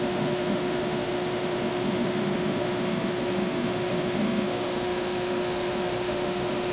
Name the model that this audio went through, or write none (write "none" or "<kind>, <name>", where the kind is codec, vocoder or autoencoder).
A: autoencoder, DAC-VAE